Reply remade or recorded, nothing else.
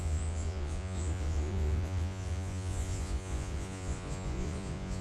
remade